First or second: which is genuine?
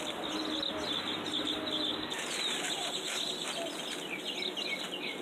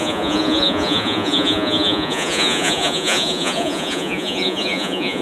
first